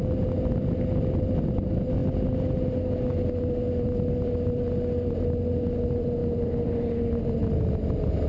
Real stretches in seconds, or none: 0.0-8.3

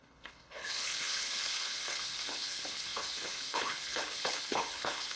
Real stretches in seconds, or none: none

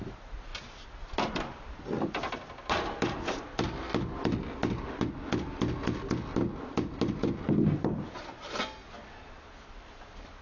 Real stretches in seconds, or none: 0.0-10.4

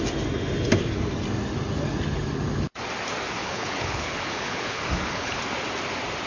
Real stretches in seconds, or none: 0.0-3.4; 5.4-6.3

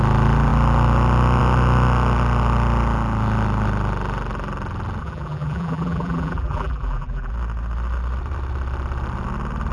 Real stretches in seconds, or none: 0.0-5.0; 7.3-9.7